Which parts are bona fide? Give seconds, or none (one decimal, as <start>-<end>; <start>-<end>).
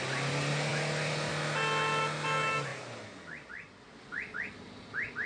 0.0-5.3